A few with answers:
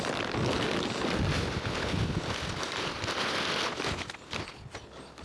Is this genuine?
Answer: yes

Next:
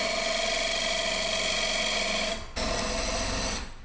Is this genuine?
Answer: yes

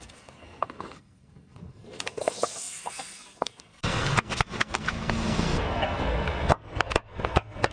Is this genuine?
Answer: no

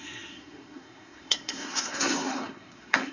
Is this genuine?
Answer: no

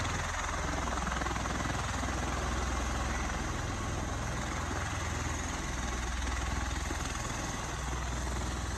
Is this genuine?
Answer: yes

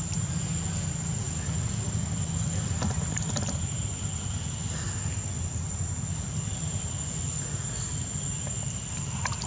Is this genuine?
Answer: yes